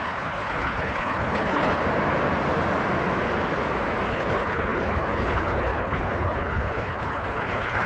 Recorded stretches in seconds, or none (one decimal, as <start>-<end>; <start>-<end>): 1.8-4.1